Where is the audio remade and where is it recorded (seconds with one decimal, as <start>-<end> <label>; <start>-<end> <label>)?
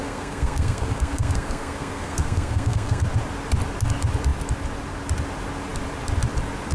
0.0-3.0 remade; 3.0-6.7 recorded